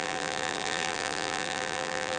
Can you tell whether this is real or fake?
fake